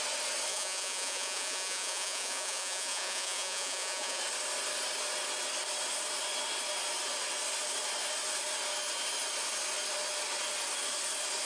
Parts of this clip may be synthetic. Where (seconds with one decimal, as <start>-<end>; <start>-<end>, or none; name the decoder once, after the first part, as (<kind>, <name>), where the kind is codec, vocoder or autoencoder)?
0.5-4.2 (vocoder, Vocos)